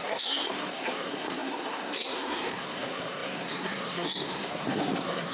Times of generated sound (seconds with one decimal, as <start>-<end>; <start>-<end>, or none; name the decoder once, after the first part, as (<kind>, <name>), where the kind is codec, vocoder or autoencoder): 0.0-5.3 (codec, SNAC)